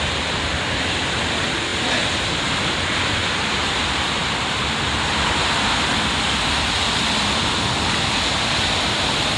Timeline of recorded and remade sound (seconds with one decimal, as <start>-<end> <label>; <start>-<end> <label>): 0.0-9.4 recorded